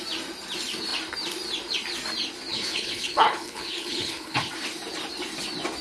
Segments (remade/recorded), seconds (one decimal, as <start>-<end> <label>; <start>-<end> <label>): 0.0-2.5 recorded; 2.5-4.5 remade; 4.5-5.8 recorded